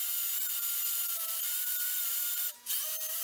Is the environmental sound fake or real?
fake